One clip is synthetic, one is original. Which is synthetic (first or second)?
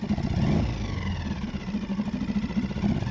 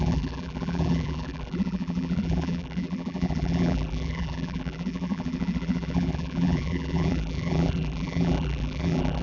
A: second